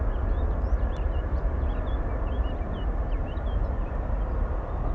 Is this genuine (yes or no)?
yes